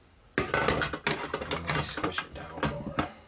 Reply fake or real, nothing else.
real